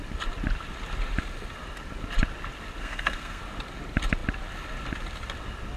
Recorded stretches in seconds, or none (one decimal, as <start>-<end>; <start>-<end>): 0.0-2.8; 3.4-5.8